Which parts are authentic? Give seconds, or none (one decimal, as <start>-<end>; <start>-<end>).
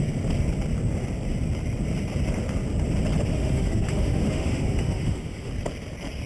0.0-3.3; 5.5-6.3